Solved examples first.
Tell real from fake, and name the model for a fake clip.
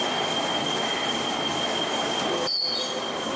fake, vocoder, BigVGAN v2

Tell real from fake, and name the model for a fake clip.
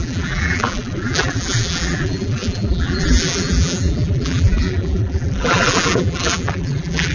fake, vocoder, BigVGAN v2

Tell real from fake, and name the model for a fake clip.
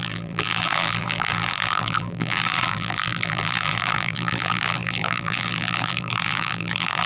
fake, vocoder, BigVGAN v2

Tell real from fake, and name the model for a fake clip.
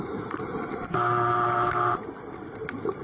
fake, vocoder, BigVGAN v2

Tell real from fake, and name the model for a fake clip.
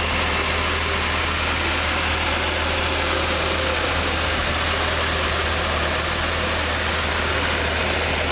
real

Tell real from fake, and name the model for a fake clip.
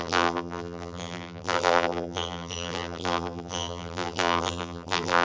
fake, vocoder, BigVGAN v2